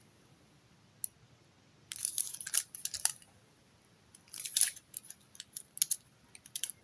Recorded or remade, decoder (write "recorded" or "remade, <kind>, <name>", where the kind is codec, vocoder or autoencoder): recorded